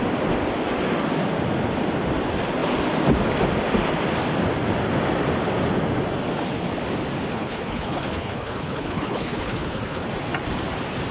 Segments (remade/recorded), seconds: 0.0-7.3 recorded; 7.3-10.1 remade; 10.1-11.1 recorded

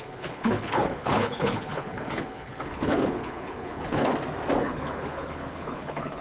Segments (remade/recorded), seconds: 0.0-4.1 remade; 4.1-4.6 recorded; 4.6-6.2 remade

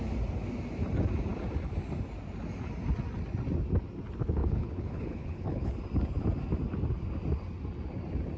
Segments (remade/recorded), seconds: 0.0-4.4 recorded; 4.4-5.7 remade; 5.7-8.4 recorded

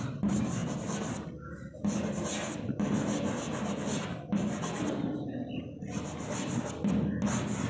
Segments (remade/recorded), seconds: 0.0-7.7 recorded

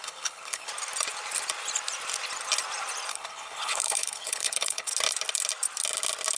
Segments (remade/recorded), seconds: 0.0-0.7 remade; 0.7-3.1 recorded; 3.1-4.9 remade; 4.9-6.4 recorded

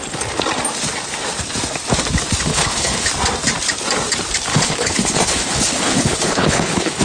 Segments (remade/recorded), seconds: 0.0-2.5 recorded; 2.5-3.1 remade; 3.1-4.5 recorded; 4.5-7.0 remade

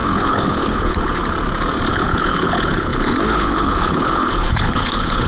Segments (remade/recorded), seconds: 0.0-1.2 remade; 1.2-1.9 recorded; 1.9-5.3 remade

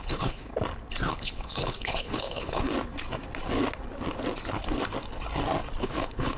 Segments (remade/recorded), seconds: 0.0-0.5 remade; 0.5-1.1 recorded; 1.1-2.7 remade; 2.7-5.8 recorded; 5.8-6.4 remade